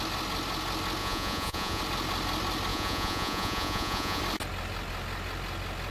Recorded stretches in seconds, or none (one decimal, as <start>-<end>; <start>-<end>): 0.0-1.0; 1.8-2.7; 4.2-5.9